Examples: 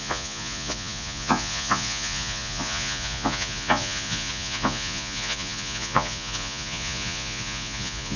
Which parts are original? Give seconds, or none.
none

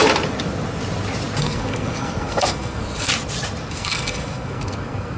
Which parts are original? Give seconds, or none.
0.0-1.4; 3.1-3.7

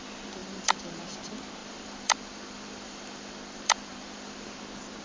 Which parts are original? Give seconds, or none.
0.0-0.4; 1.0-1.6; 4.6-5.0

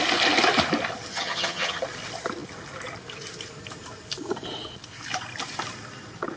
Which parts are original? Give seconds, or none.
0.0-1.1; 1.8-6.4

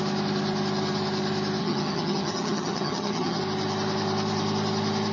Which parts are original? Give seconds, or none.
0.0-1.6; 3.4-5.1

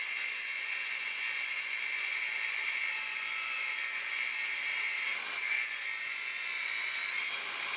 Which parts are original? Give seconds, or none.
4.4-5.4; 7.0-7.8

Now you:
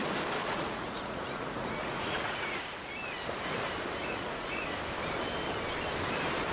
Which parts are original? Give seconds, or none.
0.0-0.4; 2.9-4.0; 4.6-6.5

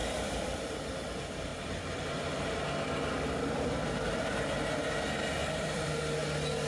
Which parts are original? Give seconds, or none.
0.6-1.5; 2.6-5.4; 5.9-6.7